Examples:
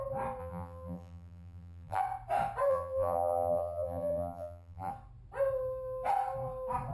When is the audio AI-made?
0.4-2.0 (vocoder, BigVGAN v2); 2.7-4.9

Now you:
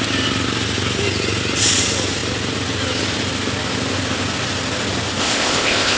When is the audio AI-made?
5.2-6.0 (codec, ZipCodec)

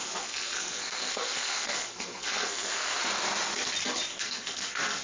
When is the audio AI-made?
0.0-3.0 (codec, SNAC); 4.1-5.0

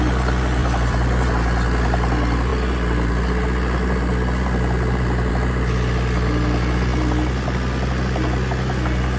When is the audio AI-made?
0.6-1.3 (vocoder, BigVGAN v2)

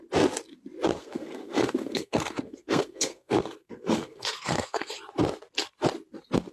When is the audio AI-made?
1.0-4.9 (codec, SNAC)

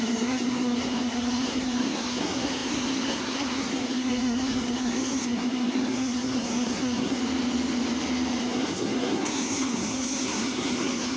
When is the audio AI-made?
0.0-7.2 (codec, SNAC); 8.4-11.2